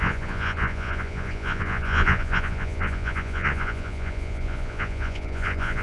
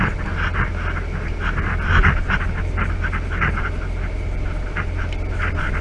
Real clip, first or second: second